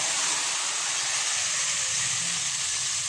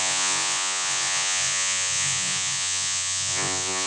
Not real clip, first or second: second